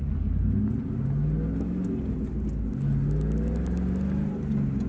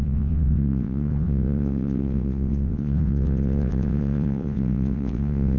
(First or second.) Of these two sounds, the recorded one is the first